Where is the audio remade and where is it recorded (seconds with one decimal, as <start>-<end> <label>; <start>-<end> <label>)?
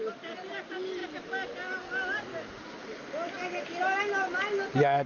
0.0-5.1 recorded